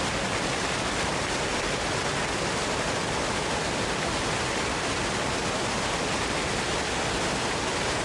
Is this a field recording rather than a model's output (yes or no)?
yes